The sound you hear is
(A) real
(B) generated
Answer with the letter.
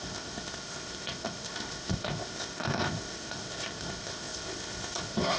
B